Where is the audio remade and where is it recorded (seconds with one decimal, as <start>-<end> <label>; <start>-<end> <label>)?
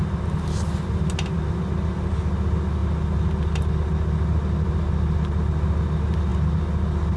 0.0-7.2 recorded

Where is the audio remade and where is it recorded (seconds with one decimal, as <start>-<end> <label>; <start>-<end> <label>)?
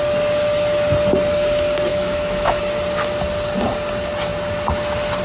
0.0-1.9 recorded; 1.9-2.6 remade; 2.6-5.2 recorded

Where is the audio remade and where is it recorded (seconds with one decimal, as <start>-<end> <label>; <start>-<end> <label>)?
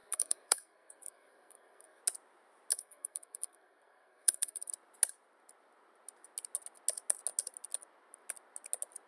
0.0-2.0 remade; 2.0-2.7 recorded; 2.7-4.7 remade; 4.7-9.1 recorded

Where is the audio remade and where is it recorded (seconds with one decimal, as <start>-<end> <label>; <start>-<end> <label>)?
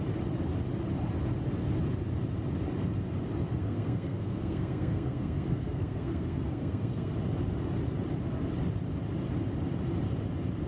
0.0-3.6 recorded; 3.6-7.1 remade; 7.1-10.7 recorded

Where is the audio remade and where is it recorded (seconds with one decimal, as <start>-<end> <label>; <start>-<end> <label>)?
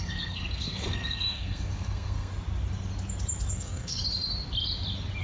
0.0-2.3 remade; 2.3-3.5 recorded; 3.5-4.0 remade; 4.0-5.2 recorded